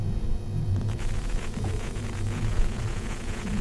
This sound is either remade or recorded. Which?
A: remade